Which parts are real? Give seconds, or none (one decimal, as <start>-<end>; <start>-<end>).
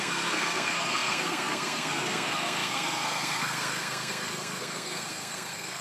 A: none